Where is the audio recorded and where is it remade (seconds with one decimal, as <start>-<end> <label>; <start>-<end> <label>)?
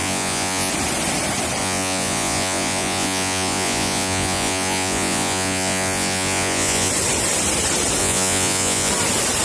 0.0-0.7 remade; 0.7-1.6 recorded; 1.6-6.9 remade; 6.9-8.0 recorded; 8.0-8.9 remade; 8.9-9.4 recorded